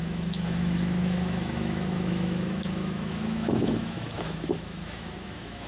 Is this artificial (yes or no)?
yes